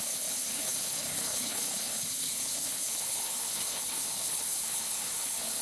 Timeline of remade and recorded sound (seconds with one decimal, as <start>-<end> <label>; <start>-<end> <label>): 0.0-5.6 remade